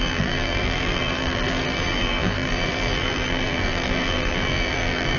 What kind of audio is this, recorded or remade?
remade